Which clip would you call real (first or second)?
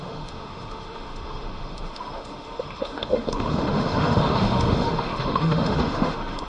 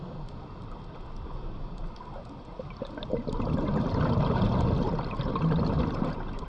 second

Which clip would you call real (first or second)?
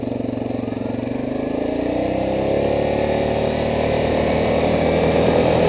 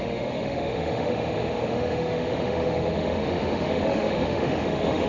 first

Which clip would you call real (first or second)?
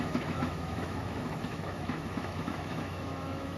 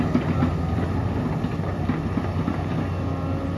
second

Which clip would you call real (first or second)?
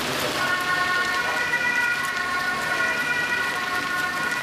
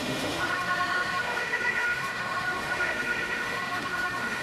first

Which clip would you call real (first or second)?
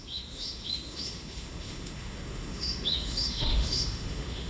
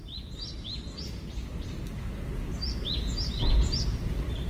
second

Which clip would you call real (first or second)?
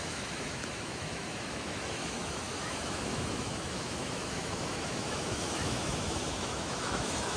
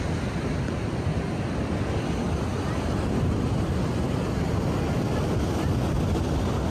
second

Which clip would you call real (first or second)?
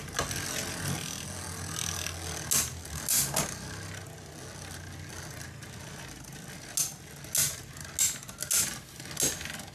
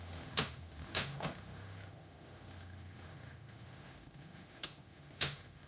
first